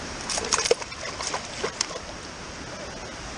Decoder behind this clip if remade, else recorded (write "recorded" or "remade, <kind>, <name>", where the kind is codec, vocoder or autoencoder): recorded